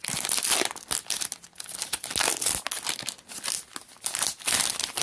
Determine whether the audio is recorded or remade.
recorded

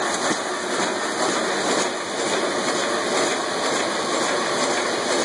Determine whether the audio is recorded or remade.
recorded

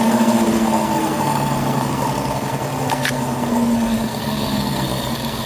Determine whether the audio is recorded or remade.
remade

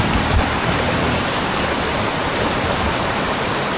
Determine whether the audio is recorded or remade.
remade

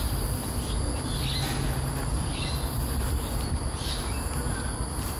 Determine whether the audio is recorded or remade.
recorded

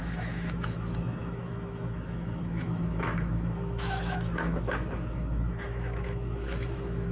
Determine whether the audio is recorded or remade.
remade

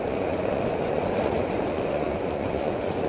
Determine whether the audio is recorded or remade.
remade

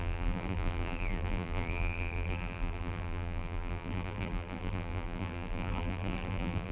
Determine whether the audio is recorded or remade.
remade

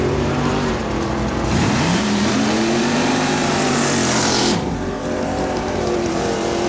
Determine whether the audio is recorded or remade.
remade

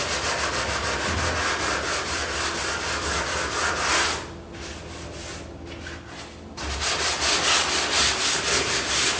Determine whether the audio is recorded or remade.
recorded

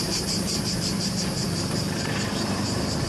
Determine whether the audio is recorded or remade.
recorded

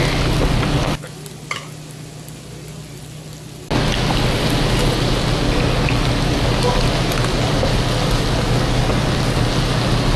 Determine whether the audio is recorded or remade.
recorded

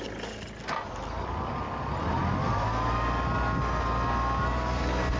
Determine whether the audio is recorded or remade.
recorded